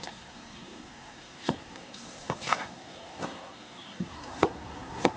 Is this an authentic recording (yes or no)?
no